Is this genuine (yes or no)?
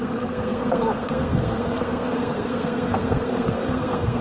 no